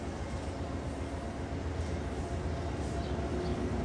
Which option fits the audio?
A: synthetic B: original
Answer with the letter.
B